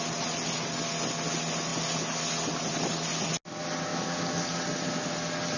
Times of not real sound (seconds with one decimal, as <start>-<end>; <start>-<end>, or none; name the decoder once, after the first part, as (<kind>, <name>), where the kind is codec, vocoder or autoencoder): none